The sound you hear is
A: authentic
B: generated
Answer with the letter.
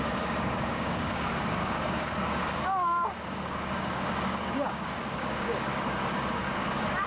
B